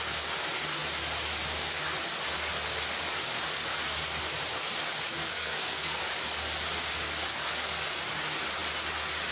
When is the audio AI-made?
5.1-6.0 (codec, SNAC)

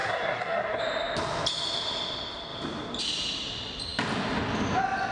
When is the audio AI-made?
0.0-0.8 (codec, SNAC)

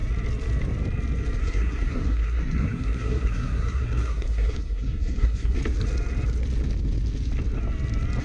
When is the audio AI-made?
1.4-5.6 (codec, SNAC)